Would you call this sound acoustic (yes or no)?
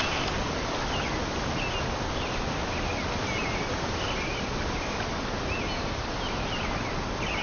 yes